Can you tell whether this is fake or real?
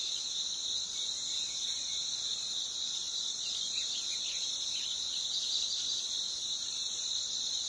real